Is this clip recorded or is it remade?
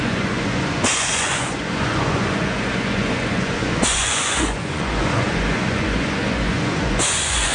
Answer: remade